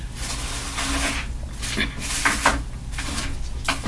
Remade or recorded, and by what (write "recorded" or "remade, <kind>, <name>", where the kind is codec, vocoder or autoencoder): recorded